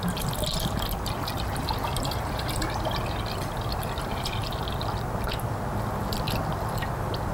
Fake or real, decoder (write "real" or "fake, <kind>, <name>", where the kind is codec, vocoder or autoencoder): real